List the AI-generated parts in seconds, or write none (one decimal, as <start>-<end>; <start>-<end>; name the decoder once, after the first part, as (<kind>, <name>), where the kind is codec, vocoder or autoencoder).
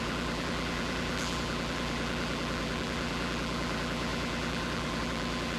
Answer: 0.0-5.6 (vocoder, BigVGAN v2)